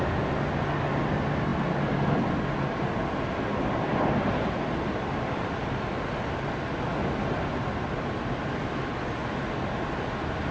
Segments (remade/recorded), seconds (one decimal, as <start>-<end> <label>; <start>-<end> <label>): 0.0-10.5 recorded

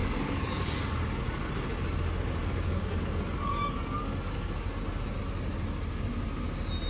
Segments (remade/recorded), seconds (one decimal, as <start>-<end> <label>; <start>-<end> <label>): 0.0-0.7 remade; 0.7-2.4 recorded; 2.4-4.7 remade; 4.7-6.9 recorded